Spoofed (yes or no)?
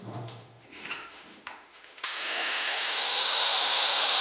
yes